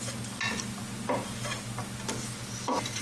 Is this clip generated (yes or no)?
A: no